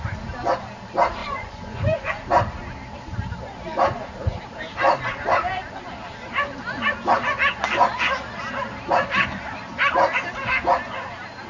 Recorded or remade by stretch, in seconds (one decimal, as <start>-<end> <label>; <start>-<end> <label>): 0.0-1.2 recorded; 1.2-2.1 remade; 2.1-11.5 recorded